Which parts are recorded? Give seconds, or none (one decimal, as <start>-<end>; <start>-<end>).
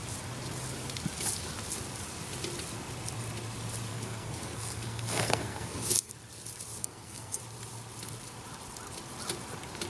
0.0-3.9; 6.1-6.8; 7.4-9.9